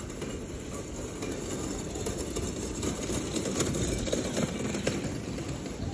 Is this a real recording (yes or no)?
yes